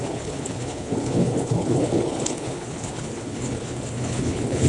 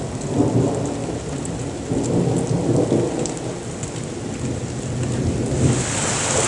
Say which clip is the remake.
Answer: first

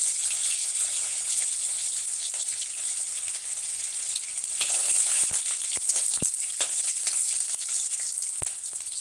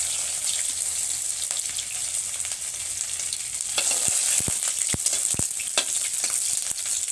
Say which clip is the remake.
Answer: first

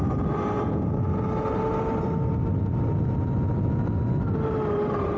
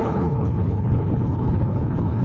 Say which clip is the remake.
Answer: second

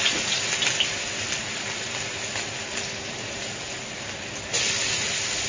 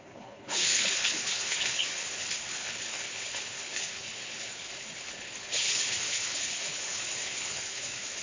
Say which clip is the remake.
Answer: second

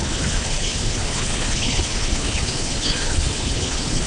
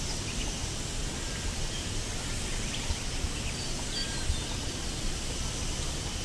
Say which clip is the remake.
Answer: first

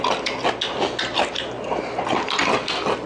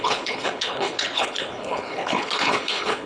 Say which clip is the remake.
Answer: second